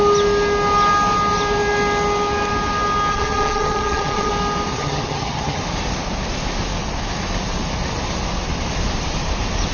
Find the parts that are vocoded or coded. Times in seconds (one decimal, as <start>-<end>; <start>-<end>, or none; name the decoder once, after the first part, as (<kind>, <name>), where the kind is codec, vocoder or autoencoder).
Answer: 3.1-4.3 (vocoder, HiFi-GAN); 4.7-5.6